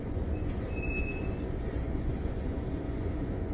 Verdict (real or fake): fake